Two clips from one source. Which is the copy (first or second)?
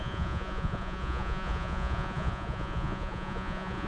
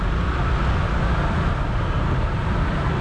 first